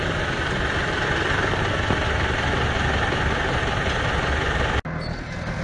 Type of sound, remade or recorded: recorded